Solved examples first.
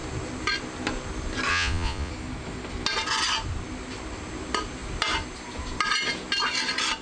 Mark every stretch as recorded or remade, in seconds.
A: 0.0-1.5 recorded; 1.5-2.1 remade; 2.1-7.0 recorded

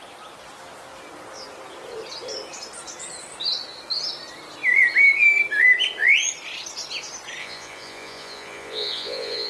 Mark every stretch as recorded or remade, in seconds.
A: 0.0-7.4 recorded; 7.4-9.5 remade